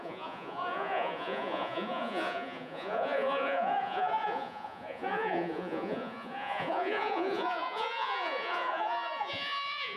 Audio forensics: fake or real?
fake